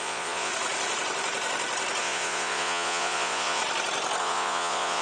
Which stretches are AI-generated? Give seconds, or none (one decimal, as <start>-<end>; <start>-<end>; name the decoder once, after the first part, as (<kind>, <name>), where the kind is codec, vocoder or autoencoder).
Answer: 0.0-0.5 (vocoder, Vocos); 2.0-3.6; 4.2-5.0